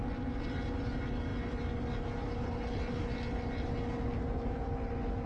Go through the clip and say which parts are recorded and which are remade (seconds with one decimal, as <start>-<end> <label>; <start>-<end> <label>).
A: 0.0-5.3 recorded